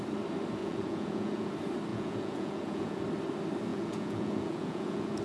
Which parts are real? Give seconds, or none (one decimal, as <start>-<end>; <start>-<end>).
0.0-0.6; 1.5-1.9; 3.0-3.7